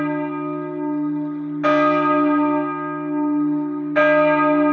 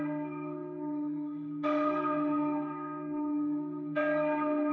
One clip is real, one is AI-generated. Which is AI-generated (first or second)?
second